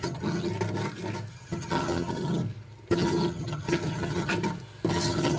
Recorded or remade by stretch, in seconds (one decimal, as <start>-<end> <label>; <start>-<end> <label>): 0.0-0.5 remade; 0.5-1.3 recorded; 1.3-2.4 remade; 2.4-2.9 recorded; 2.9-4.3 remade; 4.3-4.9 recorded; 4.9-5.4 remade